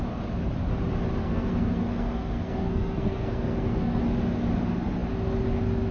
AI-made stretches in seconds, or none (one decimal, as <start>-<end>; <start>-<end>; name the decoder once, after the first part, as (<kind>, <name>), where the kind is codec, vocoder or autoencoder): 1.2-4.0 (codec, SNAC)